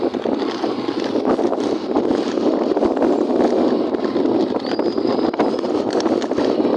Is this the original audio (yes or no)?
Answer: yes